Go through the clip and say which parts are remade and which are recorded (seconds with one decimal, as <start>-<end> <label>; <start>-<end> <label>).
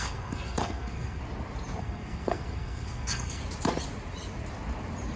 0.0-1.2 remade; 1.2-1.8 recorded; 1.8-3.4 remade; 3.4-5.2 recorded